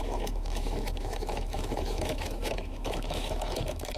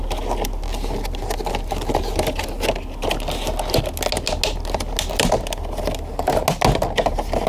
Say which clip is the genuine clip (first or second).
second